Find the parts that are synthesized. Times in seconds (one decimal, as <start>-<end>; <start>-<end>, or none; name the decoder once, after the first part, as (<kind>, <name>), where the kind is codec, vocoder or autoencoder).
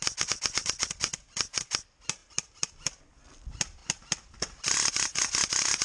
none